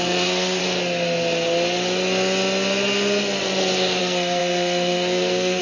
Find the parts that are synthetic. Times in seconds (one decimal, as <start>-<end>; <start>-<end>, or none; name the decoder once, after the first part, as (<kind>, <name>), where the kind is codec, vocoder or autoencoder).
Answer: 0.0-0.6 (codec, SNAC); 4.0-5.6